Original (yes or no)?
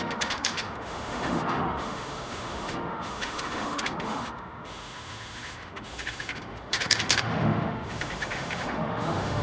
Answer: no